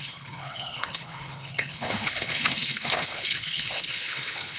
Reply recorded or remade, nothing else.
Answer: remade